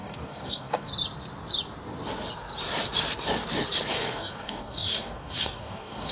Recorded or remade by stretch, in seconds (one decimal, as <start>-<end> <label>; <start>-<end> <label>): 0.0-0.9 remade; 0.9-3.9 recorded; 3.9-6.1 remade

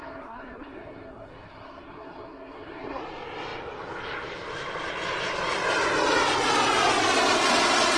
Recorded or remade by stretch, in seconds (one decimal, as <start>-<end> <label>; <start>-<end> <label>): 0.0-3.0 remade; 3.0-8.0 recorded